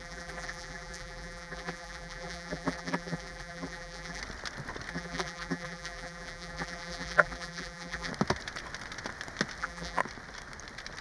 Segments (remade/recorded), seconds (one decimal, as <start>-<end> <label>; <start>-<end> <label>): 0.0-4.2 remade; 4.2-4.9 recorded; 4.9-8.1 remade; 8.1-9.6 recorded; 9.6-10.0 remade; 10.0-11.0 recorded